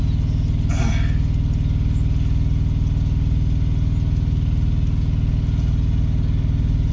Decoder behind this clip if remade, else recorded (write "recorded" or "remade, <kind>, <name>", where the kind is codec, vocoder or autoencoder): recorded